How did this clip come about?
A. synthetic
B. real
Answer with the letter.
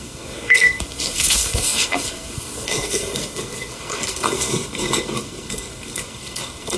A